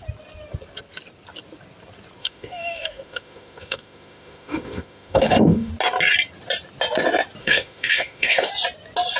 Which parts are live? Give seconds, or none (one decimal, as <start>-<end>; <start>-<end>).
0.0-2.2; 5.7-7.4; 8.5-9.2